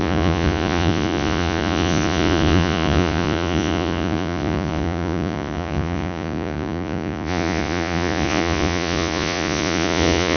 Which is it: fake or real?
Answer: fake